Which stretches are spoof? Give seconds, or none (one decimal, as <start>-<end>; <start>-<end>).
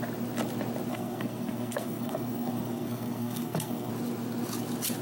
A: 0.9-3.9